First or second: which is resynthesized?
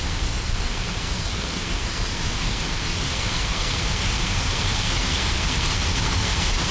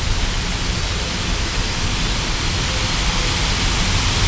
first